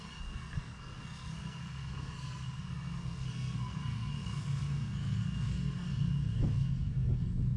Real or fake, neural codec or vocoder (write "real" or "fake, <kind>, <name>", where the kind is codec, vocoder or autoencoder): fake, codec, SNAC